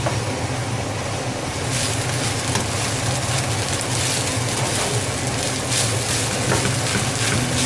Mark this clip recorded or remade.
recorded